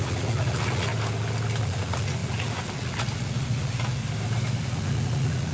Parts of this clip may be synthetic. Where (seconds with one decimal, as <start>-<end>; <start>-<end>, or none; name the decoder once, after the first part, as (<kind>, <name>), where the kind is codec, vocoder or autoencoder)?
0.0-0.9 (vocoder, Vocos); 1.6-4.0; 4.6-5.5